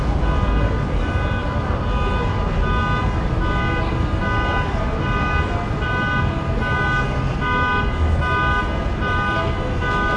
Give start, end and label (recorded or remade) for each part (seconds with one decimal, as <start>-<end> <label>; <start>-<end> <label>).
0.0-10.2 recorded